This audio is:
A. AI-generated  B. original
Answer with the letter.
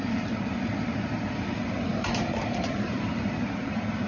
A